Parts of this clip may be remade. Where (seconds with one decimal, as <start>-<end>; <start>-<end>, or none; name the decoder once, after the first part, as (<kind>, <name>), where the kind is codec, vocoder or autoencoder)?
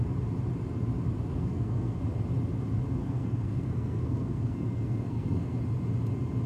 1.3-2.0 (codec, SNAC); 3.0-5.6